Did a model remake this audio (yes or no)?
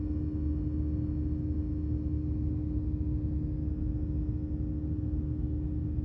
no